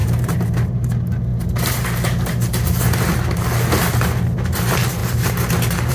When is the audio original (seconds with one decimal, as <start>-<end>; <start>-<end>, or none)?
0.7-5.9